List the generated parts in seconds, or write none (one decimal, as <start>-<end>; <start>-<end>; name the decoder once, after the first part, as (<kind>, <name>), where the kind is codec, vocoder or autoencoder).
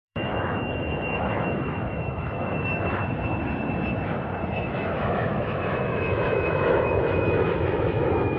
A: 0.0-3.0 (autoencoder, DAC-VAE); 4.6-8.4